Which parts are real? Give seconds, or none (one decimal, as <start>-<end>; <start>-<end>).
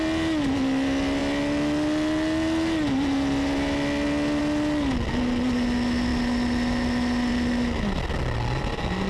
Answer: 0.0-9.1